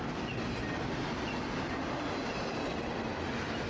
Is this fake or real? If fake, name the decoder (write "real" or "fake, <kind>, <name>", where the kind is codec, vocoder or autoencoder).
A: real